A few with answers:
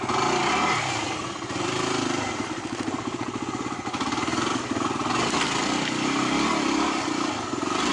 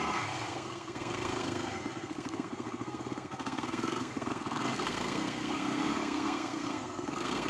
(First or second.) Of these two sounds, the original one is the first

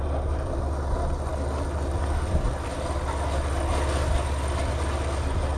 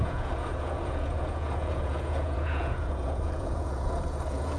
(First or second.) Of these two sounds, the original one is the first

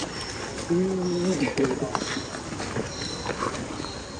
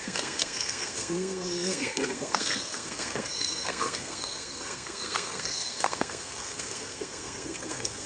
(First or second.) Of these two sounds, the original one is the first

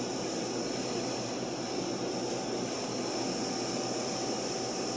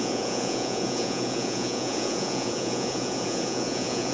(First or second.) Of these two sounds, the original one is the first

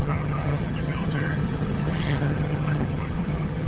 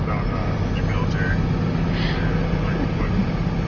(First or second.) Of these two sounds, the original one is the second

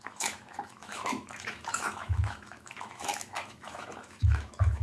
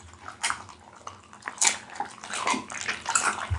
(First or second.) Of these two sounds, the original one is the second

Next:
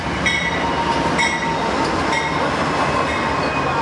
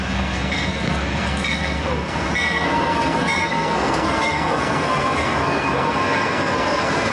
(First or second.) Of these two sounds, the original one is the first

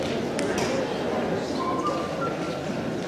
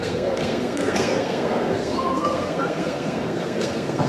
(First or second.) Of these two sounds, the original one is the first